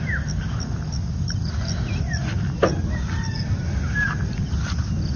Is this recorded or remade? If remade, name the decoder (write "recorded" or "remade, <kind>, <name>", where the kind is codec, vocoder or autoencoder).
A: recorded